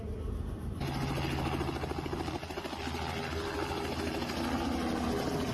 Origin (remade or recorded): recorded